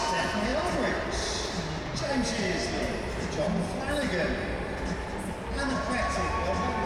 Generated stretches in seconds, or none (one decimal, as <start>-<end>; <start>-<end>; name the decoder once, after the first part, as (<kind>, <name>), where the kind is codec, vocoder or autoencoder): none